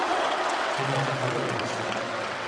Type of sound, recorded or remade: remade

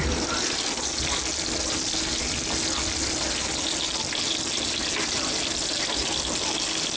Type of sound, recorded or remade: recorded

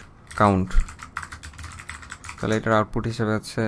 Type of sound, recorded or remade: recorded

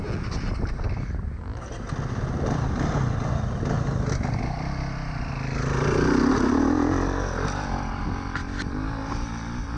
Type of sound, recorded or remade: recorded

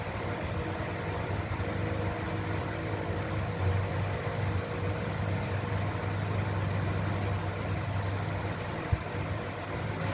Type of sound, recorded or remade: recorded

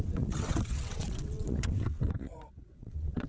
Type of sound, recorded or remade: remade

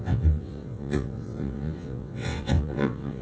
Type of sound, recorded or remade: remade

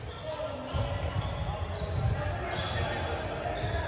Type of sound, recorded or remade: recorded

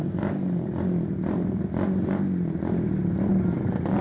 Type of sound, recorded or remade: recorded